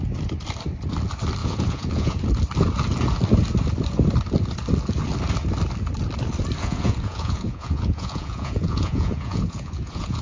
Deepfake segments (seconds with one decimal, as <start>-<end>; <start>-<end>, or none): 1.4-2.2; 6.6-10.2